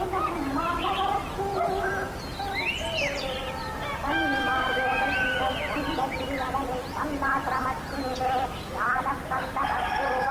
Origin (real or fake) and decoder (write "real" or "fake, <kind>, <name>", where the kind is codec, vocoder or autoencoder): real